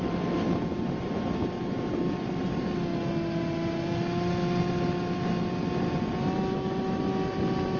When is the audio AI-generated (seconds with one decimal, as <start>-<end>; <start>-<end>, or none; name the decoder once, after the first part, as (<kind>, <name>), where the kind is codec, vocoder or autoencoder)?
none